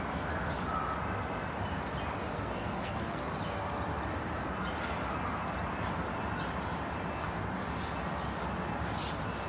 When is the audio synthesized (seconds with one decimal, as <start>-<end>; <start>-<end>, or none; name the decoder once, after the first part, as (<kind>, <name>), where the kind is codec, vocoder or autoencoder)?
2.3-3.3 (codec, SNAC)